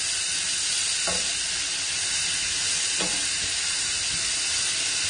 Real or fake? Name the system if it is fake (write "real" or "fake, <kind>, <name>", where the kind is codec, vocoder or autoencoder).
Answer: real